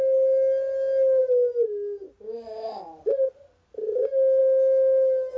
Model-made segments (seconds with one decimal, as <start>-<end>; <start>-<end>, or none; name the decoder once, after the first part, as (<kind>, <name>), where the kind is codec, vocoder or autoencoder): none